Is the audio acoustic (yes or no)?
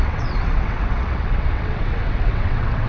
no